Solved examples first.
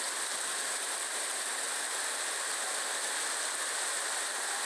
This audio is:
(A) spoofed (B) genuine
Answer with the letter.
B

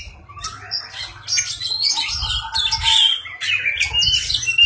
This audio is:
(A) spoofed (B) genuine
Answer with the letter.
B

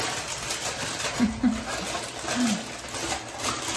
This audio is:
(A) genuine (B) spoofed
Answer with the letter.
A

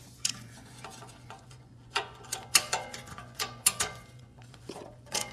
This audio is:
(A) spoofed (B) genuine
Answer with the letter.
A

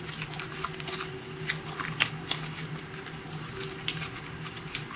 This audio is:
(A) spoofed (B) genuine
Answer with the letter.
B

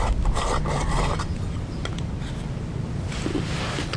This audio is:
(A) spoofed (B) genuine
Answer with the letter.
B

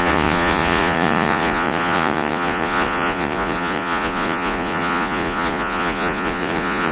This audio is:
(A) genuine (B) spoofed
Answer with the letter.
B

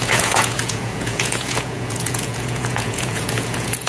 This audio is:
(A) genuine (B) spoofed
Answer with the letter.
B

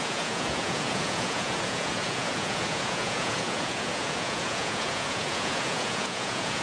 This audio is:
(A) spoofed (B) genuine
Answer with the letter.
A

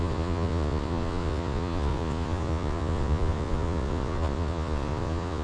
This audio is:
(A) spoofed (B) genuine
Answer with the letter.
A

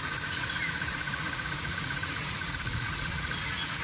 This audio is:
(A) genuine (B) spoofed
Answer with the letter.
B